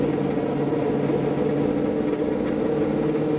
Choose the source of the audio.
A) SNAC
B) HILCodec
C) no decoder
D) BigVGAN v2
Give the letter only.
C